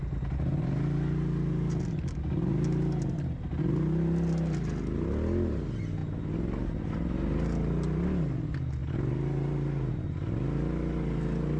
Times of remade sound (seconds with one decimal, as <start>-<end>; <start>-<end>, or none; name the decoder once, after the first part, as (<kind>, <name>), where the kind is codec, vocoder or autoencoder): none